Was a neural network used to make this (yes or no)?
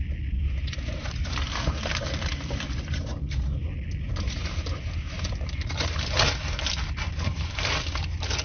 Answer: no